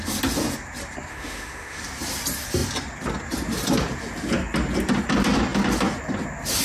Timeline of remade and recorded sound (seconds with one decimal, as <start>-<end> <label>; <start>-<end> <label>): 0.0-1.1 recorded; 1.1-1.8 remade; 1.8-6.6 recorded